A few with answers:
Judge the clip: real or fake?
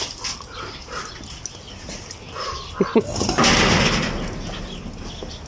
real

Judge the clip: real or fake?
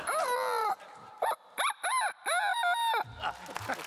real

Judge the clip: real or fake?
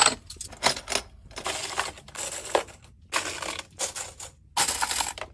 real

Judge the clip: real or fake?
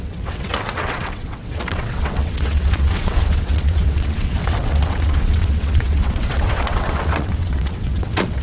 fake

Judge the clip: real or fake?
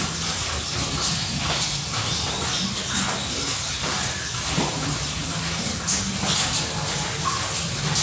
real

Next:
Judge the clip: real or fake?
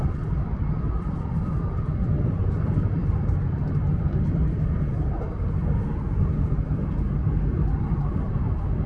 fake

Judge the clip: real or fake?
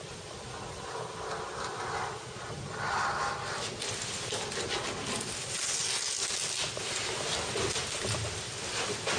real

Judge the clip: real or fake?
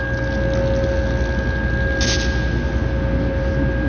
real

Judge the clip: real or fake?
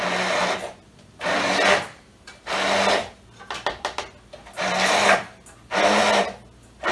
real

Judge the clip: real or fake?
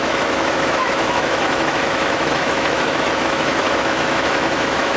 fake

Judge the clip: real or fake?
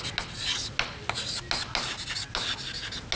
real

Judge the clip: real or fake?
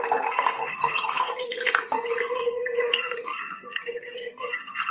fake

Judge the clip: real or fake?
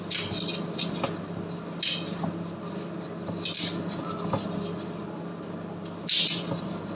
real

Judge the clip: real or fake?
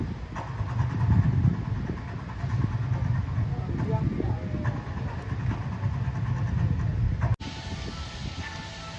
real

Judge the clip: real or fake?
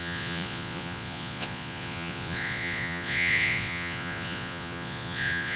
fake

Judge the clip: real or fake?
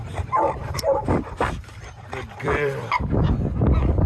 fake